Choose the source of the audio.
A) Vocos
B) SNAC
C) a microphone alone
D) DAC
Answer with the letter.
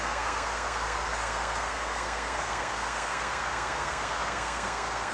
B